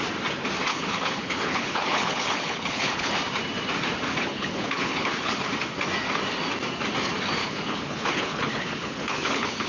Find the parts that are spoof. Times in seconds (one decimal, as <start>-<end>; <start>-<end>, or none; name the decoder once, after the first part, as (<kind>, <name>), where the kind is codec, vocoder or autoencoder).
0.7-3.1 (codec, HILCodec); 4.2-5.5; 7.4-9.7